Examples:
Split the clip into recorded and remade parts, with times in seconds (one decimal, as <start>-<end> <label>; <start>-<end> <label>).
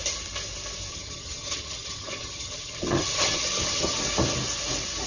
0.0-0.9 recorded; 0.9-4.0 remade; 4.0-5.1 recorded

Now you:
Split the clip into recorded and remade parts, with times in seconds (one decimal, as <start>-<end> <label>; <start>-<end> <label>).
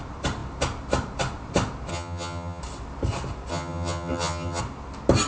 0.0-1.9 recorded; 1.9-2.6 remade; 2.6-3.5 recorded; 3.5-4.6 remade; 4.6-5.3 recorded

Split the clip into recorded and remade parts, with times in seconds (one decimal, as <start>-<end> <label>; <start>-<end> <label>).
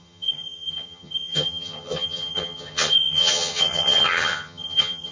0.0-5.1 remade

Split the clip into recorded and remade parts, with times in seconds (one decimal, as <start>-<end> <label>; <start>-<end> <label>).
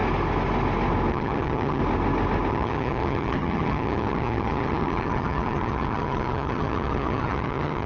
0.0-1.1 recorded; 1.1-1.8 remade; 1.8-2.5 recorded; 2.5-7.9 remade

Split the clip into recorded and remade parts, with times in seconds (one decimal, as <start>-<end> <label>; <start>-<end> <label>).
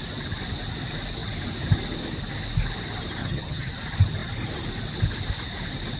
0.0-3.2 recorded; 3.2-3.7 remade; 3.7-6.0 recorded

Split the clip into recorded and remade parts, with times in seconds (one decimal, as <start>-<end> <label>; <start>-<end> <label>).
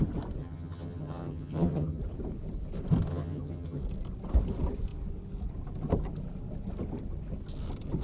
0.0-0.4 recorded; 0.4-2.0 remade; 2.0-3.1 recorded; 3.1-3.8 remade; 3.8-8.0 recorded